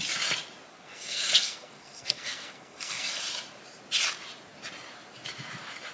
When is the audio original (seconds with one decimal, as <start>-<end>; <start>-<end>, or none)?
0.0-0.7; 3.2-5.9